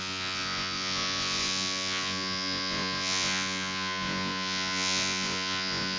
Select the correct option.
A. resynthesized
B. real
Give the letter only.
A